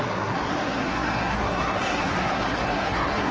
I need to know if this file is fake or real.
fake